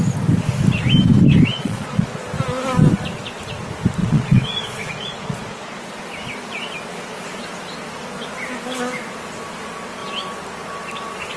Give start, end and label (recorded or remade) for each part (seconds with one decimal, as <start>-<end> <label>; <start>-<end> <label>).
0.0-1.5 recorded; 1.5-2.2 remade; 2.2-4.0 recorded; 4.0-5.8 remade; 5.8-11.4 recorded